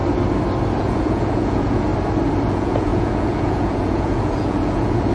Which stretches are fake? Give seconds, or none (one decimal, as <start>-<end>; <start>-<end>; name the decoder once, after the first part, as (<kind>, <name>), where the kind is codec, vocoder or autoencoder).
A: 0.8-1.9 (vocoder, Vocos); 2.5-5.1